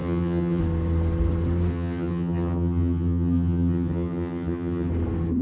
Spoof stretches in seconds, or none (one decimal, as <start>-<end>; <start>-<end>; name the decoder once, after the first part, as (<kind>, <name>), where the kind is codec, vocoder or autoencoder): 0.0-0.6 (vocoder, HiFi-GAN); 1.7-4.9